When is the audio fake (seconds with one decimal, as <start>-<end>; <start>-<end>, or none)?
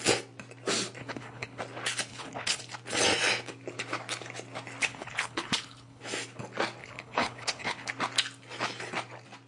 1.0-1.6; 2.1-2.6; 4.8-6.0; 6.8-7.9